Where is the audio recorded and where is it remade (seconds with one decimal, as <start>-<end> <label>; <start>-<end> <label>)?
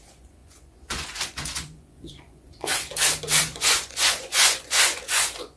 0.0-2.9 remade; 2.9-3.4 recorded; 3.4-5.6 remade